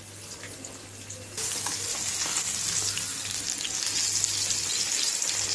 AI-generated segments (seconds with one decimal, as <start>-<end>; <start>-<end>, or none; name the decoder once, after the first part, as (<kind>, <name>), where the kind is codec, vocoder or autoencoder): none